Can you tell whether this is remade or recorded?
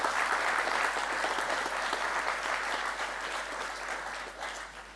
recorded